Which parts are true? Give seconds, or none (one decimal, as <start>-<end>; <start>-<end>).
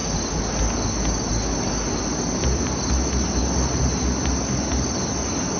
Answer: 0.0-5.6